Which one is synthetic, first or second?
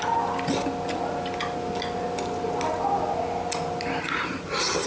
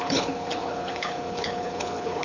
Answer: second